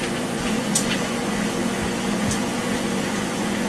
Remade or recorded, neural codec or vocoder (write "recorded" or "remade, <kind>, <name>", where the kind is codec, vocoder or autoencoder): remade, vocoder, Vocos